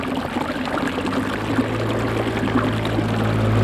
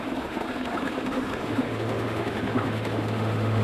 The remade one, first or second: second